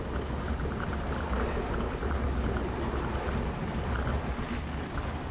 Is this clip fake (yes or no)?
no